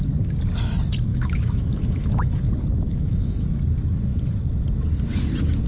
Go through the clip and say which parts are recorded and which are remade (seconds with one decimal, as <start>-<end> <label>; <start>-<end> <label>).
0.0-1.1 recorded; 1.1-2.4 remade; 2.4-2.9 recorded; 2.9-3.6 remade; 3.6-5.7 recorded